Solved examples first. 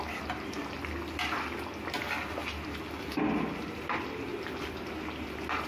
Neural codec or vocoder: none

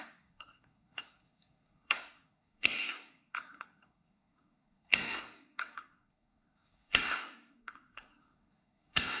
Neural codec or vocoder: codec, SNAC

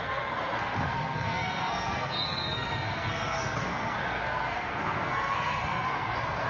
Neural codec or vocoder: codec, SNAC